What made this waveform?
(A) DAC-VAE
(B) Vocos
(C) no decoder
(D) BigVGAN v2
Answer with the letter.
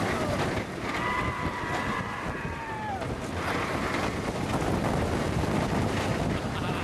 D